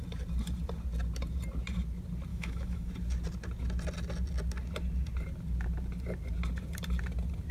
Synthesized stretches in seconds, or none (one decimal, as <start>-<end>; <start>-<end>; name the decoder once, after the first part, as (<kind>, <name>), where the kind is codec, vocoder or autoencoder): 2.3-2.9 (autoencoder, DAC-VAE)